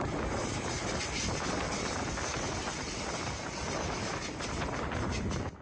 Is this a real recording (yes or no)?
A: yes